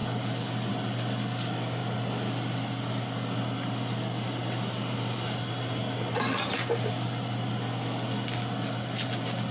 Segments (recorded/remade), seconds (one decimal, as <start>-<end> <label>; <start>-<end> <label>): 0.0-9.5 recorded